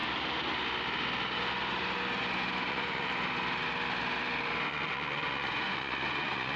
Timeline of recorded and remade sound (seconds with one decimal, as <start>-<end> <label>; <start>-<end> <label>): 0.0-2.7 recorded; 2.7-3.1 remade; 3.1-4.7 recorded; 4.7-6.6 remade